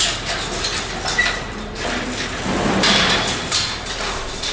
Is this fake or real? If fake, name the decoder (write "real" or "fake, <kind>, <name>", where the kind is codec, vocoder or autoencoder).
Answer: real